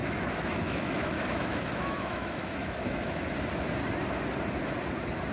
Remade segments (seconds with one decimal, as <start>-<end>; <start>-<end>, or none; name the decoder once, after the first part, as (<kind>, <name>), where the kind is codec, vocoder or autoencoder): 0.0-3.2 (autoencoder, DAC-VAE)

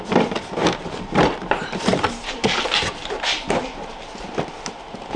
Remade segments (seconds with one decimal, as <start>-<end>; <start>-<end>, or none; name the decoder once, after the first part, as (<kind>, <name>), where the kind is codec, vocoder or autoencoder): none